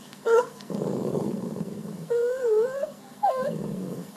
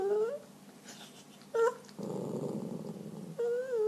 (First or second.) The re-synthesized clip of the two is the first